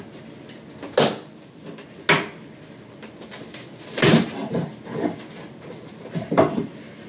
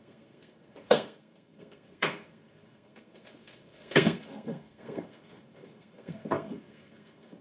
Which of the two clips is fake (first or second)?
second